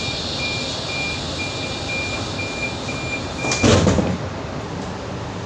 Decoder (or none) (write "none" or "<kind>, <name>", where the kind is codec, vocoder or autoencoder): none